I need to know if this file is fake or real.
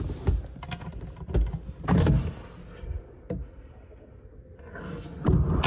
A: real